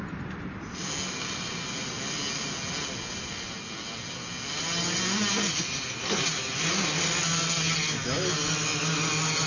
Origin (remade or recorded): recorded